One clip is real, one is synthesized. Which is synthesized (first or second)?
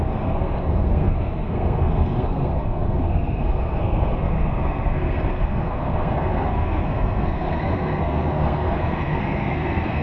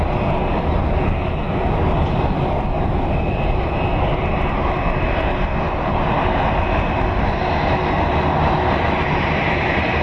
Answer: first